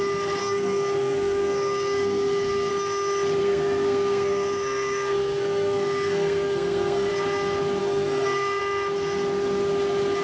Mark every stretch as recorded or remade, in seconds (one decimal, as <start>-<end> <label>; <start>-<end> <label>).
0.0-0.4 recorded; 0.4-2.7 remade; 2.7-3.4 recorded; 3.4-7.1 remade; 7.1-7.8 recorded; 7.8-8.6 remade; 8.6-10.2 recorded